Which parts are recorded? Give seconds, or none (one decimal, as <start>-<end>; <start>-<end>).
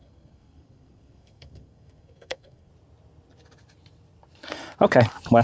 2.7-5.4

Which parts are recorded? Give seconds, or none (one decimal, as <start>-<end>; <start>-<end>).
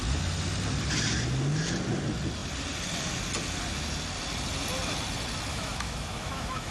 0.0-5.5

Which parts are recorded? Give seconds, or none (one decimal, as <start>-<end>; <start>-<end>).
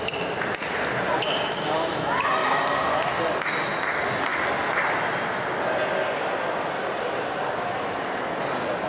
0.0-8.9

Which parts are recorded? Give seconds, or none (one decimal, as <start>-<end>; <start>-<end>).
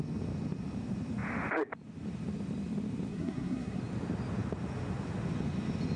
0.0-3.1; 3.8-6.0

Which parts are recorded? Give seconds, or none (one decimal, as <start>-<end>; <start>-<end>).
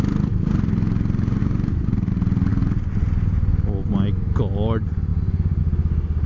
0.0-1.4; 2.1-5.1; 5.6-6.3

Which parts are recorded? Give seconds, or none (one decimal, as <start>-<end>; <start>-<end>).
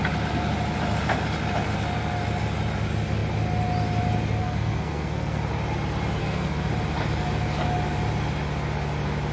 0.0-4.4; 5.5-6.2; 6.7-9.3